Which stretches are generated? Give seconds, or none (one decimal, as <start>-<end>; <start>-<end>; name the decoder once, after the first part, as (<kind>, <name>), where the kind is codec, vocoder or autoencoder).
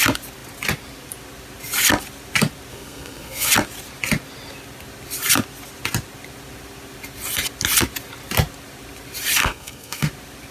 2.7-3.5 (codec, SNAC); 9.4-10.1